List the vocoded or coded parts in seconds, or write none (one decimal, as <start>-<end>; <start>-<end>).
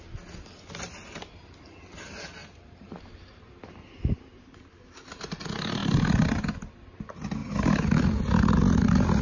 2.4-5.2